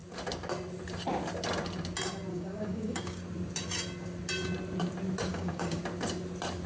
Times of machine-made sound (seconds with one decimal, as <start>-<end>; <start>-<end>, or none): 2.3-3.2; 5.3-5.8